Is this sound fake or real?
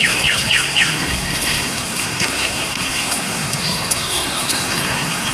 fake